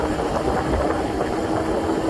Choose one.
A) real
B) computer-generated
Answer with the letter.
A